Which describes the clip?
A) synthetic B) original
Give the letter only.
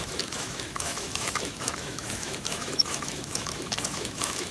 A